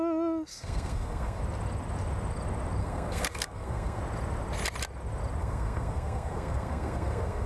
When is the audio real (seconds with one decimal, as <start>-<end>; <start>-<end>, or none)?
0.0-0.5; 1.4-2.8; 4.0-5.4